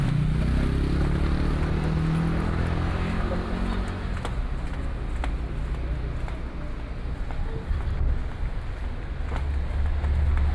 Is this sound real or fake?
real